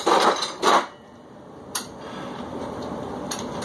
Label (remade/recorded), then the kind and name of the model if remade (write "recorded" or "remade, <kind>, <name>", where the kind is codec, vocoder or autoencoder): remade, vocoder, BigVGAN v2